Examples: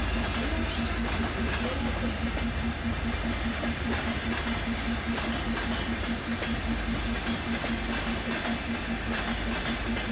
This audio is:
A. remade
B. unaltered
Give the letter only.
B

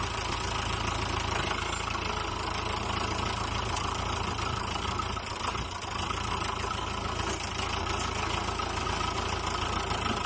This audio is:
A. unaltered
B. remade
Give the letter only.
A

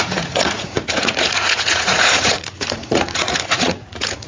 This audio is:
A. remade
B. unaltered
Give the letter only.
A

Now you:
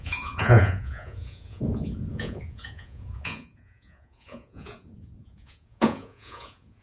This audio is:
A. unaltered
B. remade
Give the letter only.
B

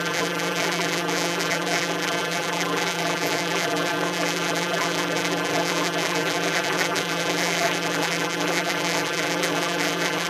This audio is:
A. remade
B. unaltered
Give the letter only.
A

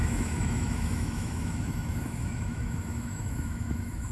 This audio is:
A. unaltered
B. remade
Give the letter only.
B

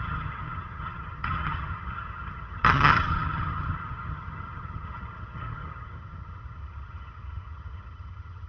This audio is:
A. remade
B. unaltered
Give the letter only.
A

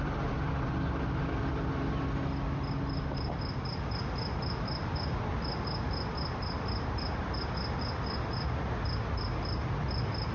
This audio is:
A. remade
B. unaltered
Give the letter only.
B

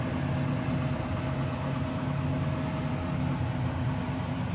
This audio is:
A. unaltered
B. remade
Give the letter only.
A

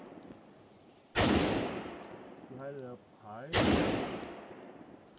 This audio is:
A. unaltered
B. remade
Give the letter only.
A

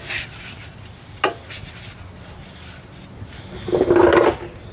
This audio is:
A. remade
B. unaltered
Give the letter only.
B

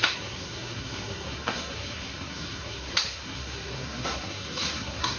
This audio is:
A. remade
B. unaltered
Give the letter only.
A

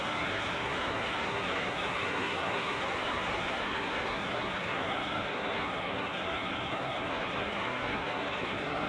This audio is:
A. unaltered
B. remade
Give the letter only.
B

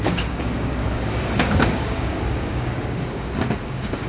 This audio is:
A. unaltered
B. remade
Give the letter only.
B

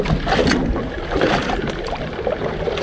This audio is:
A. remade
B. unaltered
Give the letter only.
B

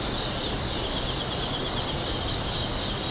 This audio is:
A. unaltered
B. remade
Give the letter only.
A